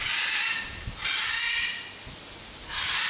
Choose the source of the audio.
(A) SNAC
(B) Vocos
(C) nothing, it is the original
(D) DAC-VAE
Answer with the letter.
C